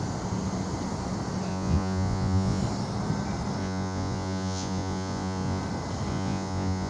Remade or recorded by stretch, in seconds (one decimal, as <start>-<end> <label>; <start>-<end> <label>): 0.0-1.5 recorded; 1.5-2.6 remade; 2.6-3.6 recorded; 3.6-5.6 remade; 5.6-6.1 recorded; 6.1-6.9 remade